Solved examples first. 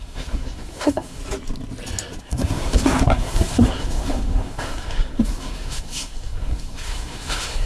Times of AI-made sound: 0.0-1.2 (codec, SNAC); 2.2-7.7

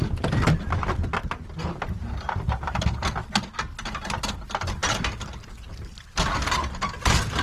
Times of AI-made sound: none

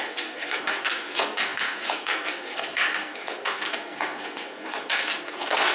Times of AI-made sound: 0.0-5.7 (codec, SNAC)

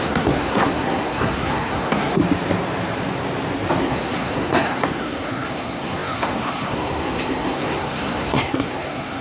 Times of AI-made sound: 0.0-2.2 (codec, SNAC); 3.8-9.2

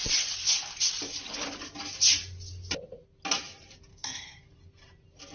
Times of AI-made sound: 3.9-4.5 (codec, SNAC)

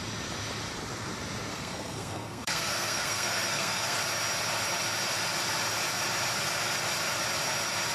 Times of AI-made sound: 1.5-4.0 (codec, SNAC)